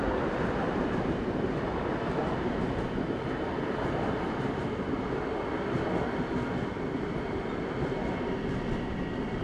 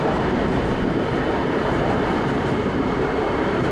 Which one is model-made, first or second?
second